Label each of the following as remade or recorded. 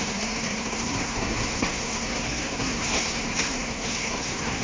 remade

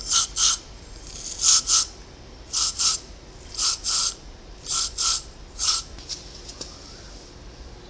recorded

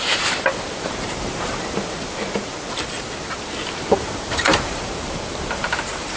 remade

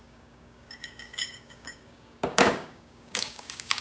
remade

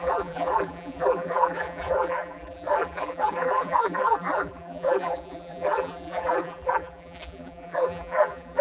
remade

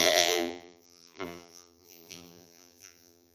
remade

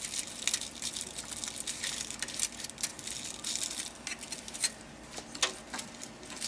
recorded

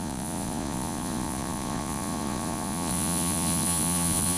remade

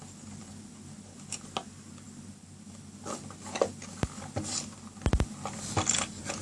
recorded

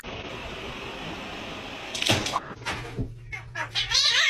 recorded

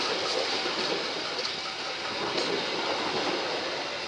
recorded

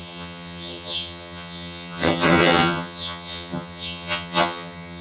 remade